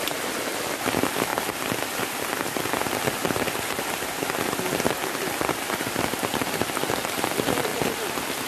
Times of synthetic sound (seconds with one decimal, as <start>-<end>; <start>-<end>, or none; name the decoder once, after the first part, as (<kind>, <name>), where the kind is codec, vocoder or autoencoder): 0.0-1.3 (vocoder, BigVGAN v2); 5.4-8.5